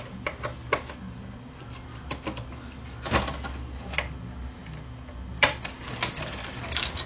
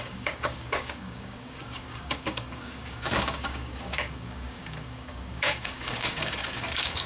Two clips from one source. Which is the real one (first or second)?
first